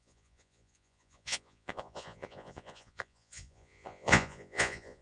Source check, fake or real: fake